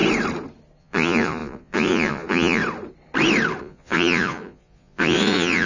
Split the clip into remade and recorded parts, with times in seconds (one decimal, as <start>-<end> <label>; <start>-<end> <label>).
0.0-0.8 recorded; 0.8-2.6 remade; 2.6-3.6 recorded; 3.6-5.7 remade